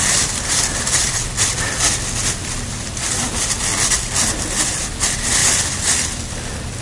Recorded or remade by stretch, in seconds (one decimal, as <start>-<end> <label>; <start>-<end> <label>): 0.0-6.8 recorded